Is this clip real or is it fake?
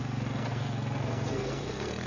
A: fake